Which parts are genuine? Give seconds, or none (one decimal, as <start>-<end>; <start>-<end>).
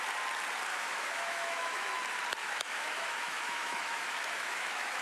0.0-0.7; 2.0-2.4